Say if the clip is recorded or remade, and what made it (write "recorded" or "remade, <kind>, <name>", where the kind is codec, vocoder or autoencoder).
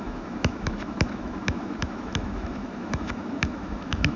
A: remade, autoencoder, DAC-VAE